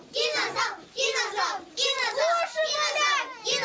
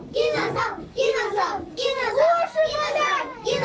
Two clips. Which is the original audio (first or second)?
first